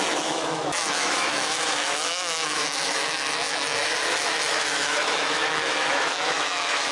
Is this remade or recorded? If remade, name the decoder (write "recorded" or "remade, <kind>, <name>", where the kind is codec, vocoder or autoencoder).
remade, autoencoder, DAC-VAE